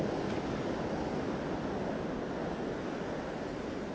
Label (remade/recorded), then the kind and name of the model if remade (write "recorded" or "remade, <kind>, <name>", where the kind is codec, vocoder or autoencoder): recorded